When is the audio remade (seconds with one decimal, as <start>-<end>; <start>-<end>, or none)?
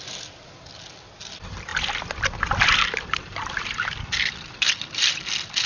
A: none